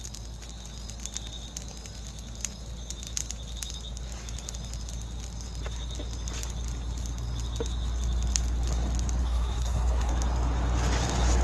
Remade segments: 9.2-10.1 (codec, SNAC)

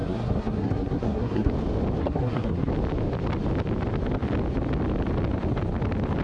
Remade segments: 0.0-1.5 (codec, SNAC); 2.0-2.7

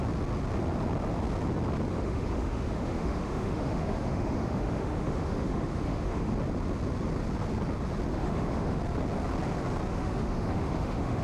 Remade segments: 1.9-6.3 (autoencoder, DAC-VAE); 8.1-8.8; 9.9-11.2

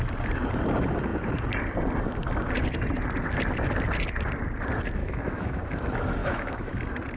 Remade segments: 5.0-5.6 (autoencoder, DAC-VAE); 6.2-6.7

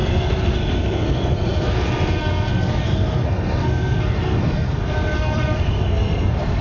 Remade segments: 0.0-6.6 (codec, SNAC)

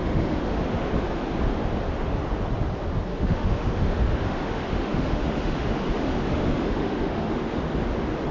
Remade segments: 0.0-0.9 (autoencoder, DAC-VAE); 3.1-7.6